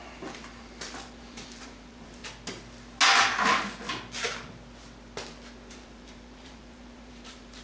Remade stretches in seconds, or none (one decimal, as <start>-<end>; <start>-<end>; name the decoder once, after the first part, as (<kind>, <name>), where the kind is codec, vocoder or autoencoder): 0.0-2.2 (vocoder, BigVGAN v2); 5.7-7.6